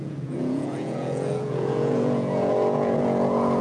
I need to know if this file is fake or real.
fake